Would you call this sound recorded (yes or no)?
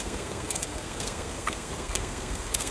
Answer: no